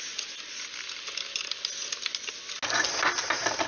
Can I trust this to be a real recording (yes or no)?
yes